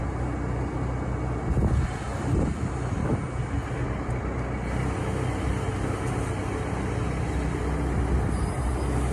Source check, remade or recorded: recorded